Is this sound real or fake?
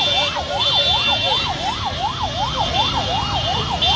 real